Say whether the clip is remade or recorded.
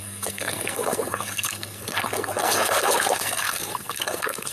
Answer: remade